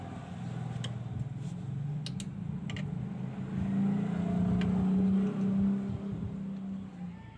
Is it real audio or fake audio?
real